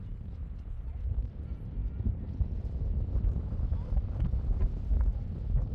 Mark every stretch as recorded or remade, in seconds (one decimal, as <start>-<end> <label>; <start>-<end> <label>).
0.0-5.7 recorded